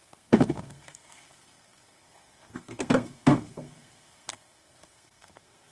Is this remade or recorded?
remade